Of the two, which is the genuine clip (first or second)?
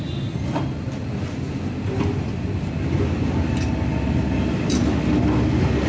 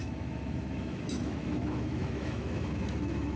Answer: first